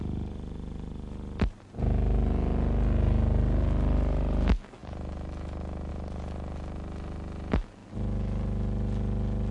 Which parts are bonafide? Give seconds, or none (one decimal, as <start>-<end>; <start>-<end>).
0.0-4.8; 5.9-9.5